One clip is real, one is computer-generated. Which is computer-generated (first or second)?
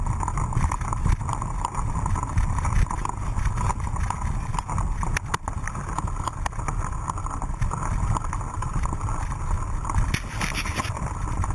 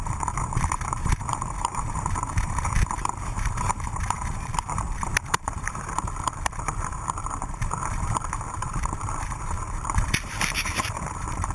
second